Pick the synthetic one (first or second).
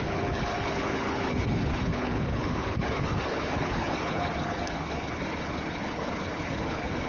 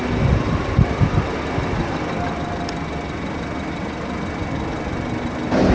first